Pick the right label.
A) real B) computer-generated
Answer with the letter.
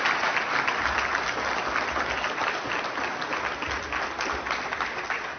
A